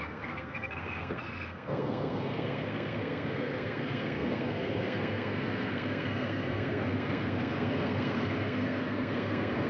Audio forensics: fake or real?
fake